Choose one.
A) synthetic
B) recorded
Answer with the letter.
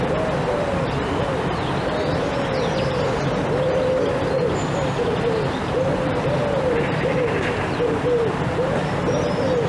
B